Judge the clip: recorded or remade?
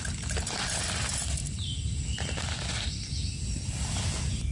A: recorded